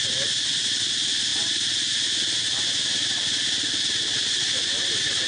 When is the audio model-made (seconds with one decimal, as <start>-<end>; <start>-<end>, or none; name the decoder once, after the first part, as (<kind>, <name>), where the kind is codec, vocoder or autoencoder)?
none